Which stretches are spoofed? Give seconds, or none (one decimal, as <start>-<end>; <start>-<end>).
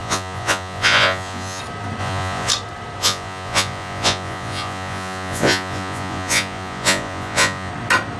0.0-1.6; 2.0-2.5; 3.0-7.7